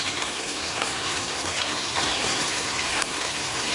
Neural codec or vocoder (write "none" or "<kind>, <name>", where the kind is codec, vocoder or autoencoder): codec, SNAC